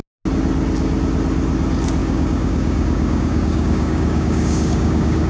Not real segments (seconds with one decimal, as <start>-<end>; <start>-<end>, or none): 2.0-5.3